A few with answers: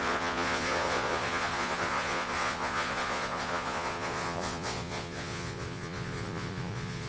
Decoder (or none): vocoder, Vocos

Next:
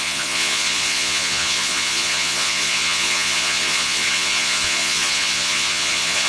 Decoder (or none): vocoder, Vocos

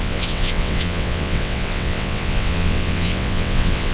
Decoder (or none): vocoder, WaveNeXt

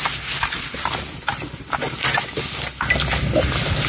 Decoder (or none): none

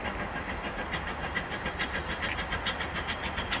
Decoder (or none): none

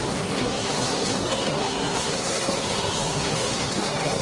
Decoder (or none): codec, SNAC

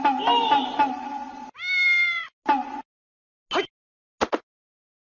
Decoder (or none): none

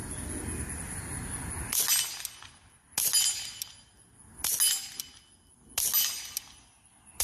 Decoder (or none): none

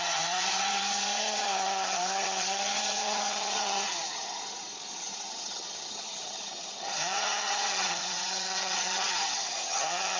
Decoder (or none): vocoder, HiFi-GAN